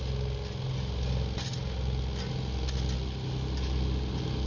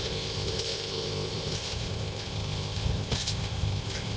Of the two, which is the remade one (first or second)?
second